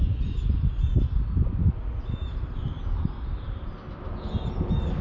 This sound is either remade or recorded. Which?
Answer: recorded